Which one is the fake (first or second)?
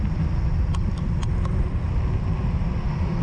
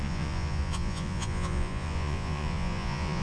second